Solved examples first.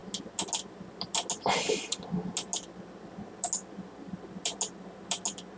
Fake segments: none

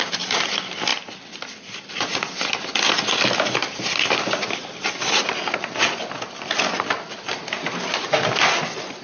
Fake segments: none

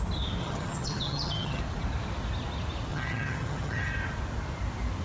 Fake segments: 0.4-1.6 (vocoder, HiFi-GAN); 2.9-3.9

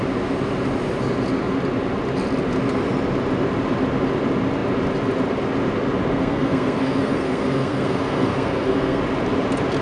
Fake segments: 6.1-9.0 (codec, SNAC)

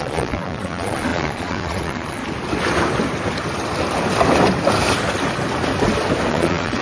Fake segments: 0.0-2.2 (vocoder, Vocos); 6.3-6.8

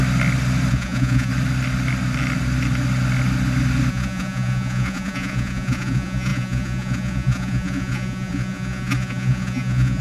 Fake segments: 0.7-1.3 (vocoder, Vocos); 3.9-10.0

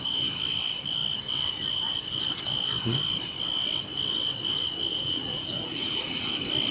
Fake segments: 4.9-6.3 (vocoder, Vocos)

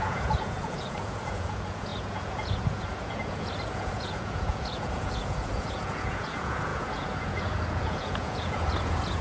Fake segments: 0.0-9.2 (vocoder, Vocos)